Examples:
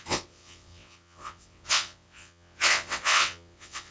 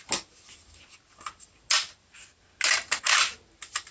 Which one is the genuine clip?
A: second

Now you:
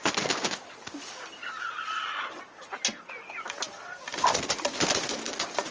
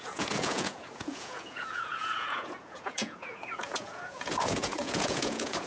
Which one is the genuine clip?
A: first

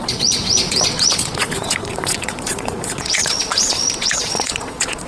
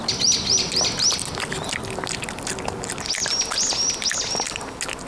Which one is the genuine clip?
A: second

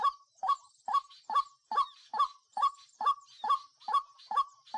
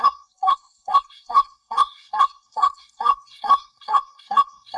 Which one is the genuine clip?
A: first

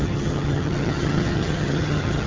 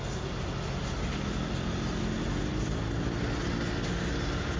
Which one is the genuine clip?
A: second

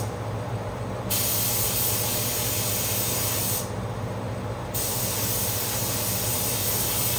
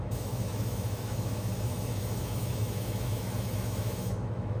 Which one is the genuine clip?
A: first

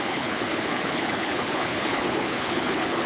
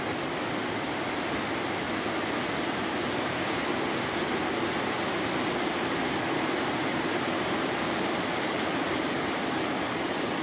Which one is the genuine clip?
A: second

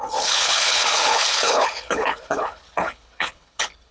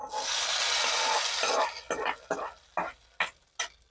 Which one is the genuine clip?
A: second